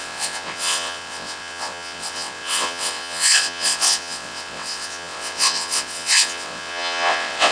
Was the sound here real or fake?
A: fake